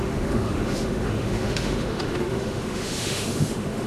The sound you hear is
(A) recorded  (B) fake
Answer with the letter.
B